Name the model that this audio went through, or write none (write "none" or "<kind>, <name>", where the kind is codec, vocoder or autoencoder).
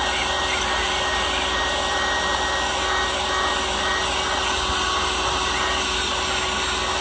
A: none